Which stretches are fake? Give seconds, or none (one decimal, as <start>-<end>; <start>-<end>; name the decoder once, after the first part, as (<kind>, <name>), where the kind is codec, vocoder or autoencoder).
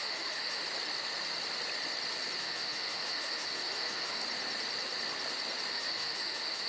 0.0-0.6 (autoencoder, DAC-VAE); 2.4-4.2; 5.7-6.7